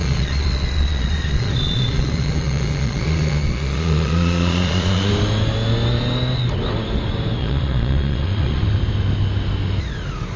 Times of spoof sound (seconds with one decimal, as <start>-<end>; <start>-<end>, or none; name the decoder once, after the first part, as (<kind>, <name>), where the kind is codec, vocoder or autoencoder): 0.0-5.1 (vocoder, Vocos); 7.4-8.6